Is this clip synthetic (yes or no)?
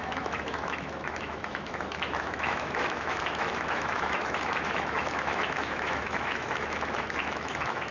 yes